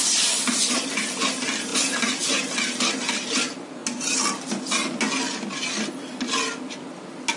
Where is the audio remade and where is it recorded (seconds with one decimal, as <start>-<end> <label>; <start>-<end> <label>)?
0.0-7.4 recorded